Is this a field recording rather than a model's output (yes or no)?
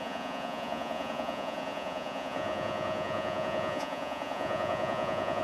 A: no